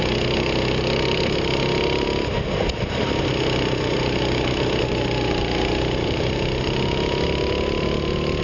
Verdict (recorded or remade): recorded